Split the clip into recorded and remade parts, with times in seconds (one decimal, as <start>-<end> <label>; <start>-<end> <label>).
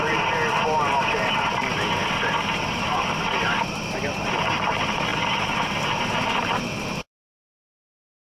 0.0-1.0 recorded; 1.0-8.4 remade